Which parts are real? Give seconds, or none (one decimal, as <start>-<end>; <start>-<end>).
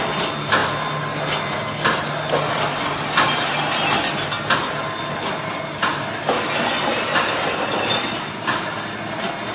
0.0-9.5